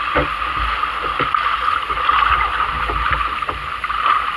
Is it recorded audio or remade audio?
recorded